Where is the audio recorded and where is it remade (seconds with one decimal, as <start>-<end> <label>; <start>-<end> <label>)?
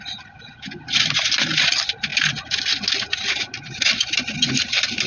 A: 0.0-5.1 recorded